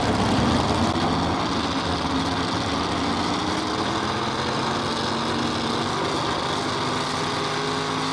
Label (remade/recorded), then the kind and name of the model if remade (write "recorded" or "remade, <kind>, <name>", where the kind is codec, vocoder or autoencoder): recorded